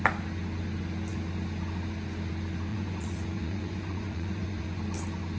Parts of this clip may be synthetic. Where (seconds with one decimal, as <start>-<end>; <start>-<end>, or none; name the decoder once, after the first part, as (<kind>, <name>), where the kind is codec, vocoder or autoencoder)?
2.7-4.8 (vocoder, Vocos)